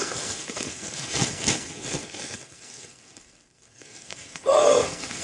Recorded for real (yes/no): no